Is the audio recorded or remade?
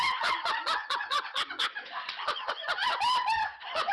remade